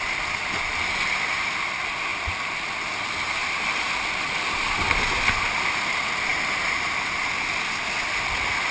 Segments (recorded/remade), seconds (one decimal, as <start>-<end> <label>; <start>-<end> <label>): 0.0-8.7 recorded